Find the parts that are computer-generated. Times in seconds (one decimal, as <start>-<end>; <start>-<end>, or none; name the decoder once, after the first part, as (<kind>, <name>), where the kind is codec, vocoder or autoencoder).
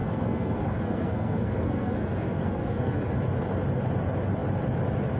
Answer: 0.0-3.1 (codec, SNAC)